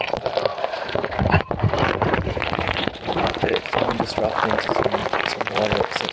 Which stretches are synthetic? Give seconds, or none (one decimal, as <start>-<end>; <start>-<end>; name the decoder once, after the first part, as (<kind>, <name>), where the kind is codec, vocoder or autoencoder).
0.5-4.2 (vocoder, Vocos); 5.0-5.6